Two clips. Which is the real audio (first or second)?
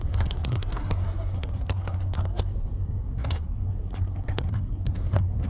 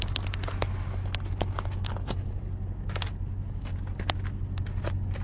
second